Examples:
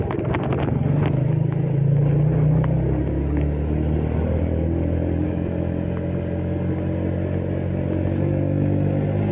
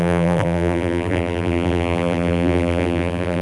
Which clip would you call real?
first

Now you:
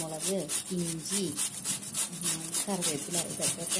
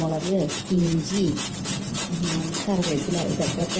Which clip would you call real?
first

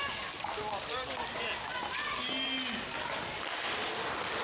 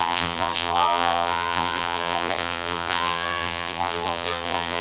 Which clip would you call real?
first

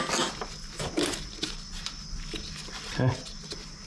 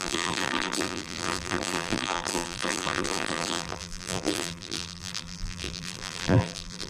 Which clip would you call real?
first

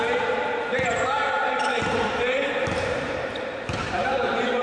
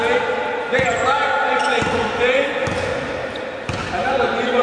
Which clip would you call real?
second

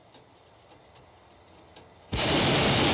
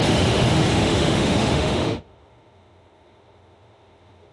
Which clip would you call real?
first